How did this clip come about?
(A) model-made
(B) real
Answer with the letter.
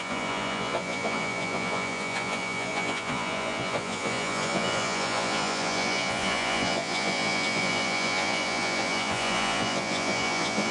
A